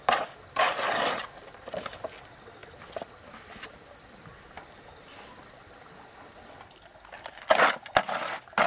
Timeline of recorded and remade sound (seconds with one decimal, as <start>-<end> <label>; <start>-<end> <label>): 0.0-1.2 recorded; 1.2-1.9 remade; 1.9-8.7 recorded